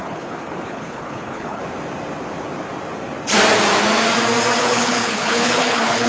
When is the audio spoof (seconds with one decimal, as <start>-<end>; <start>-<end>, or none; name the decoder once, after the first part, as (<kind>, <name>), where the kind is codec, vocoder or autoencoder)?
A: 0.0-1.6 (codec, HILCodec); 4.6-6.1